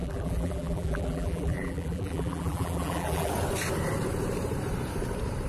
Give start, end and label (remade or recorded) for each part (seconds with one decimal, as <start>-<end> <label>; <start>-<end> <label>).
0.0-3.3 remade; 3.3-5.5 recorded